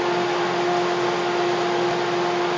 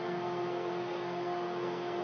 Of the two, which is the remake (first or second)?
second